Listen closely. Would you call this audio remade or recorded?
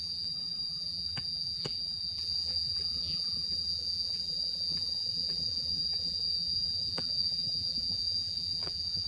remade